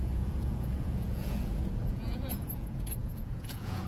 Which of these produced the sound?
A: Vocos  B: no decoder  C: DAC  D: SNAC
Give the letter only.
A